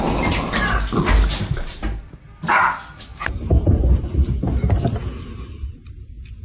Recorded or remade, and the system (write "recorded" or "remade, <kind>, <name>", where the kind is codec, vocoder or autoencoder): recorded